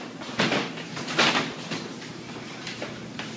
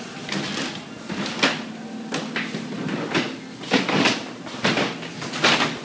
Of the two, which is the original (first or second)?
second